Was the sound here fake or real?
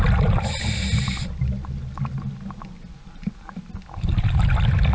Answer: real